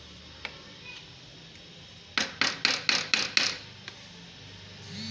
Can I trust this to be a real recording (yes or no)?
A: yes